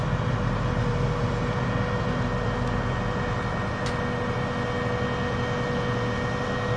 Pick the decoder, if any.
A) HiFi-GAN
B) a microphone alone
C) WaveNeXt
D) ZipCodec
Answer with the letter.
B